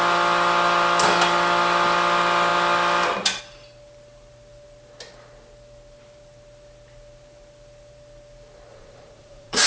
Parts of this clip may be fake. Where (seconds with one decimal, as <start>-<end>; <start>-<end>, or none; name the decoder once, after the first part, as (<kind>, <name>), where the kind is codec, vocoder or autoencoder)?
8.7-9.7 (vocoder, Vocos)